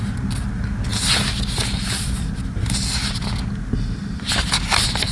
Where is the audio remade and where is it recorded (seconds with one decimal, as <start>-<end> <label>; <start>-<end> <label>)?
0.0-5.1 recorded